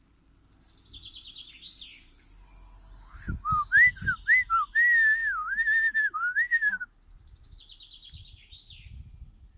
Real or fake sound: real